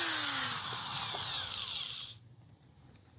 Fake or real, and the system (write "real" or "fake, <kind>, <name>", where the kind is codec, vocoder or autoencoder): real